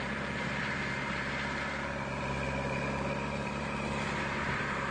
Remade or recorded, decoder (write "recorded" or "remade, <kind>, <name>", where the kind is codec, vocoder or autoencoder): remade, vocoder, BigVGAN v2